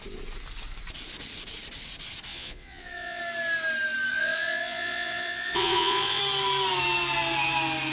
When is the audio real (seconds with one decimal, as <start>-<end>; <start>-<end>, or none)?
0.0-2.3; 3.2-4.1; 6.2-7.9

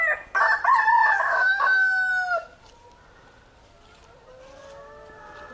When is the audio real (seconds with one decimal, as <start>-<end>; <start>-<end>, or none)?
0.0-1.0; 2.1-5.5

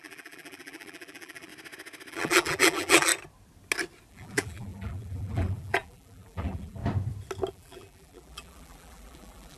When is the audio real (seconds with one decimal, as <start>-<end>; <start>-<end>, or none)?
1.5-2.1; 3.1-4.1; 6.8-7.5

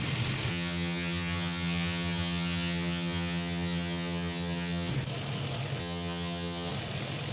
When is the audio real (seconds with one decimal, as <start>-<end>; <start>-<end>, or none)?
0.0-0.5; 4.9-5.8; 6.7-7.3